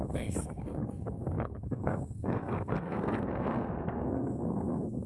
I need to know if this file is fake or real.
fake